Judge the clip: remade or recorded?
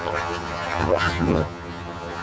remade